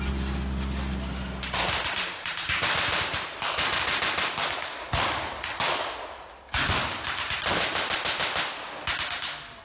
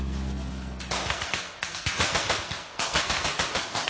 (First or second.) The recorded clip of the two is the first